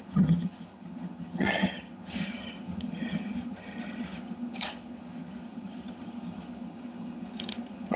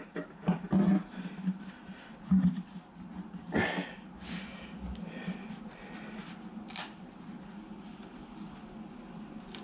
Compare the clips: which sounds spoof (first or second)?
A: first